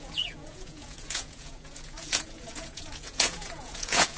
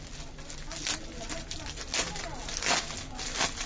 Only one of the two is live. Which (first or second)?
second